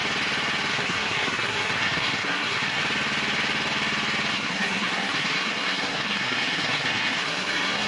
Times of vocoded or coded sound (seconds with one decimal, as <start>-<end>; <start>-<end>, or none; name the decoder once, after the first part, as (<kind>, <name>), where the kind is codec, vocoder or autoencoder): 0.7-2.8 (codec, SNAC); 4.3-7.9